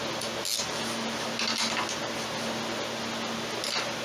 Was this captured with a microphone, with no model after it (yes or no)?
yes